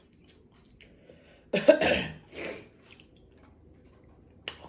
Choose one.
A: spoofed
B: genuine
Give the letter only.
B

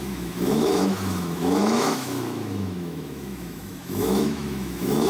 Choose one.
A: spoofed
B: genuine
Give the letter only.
A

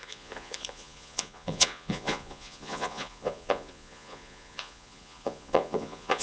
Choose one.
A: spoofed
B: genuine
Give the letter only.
A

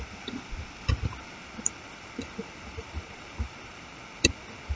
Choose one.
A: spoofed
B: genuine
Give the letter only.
B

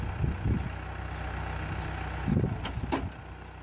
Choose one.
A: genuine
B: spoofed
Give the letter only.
A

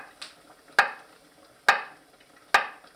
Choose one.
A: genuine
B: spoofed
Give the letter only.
A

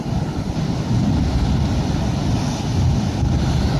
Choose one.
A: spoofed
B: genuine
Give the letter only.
B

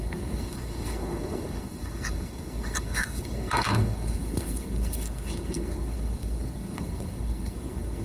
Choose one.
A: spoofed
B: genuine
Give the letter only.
A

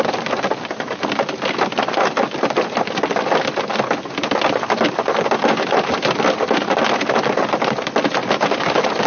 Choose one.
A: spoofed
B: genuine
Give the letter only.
B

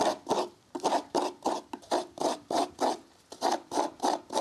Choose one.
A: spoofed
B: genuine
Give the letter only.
A